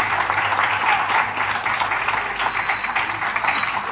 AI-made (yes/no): no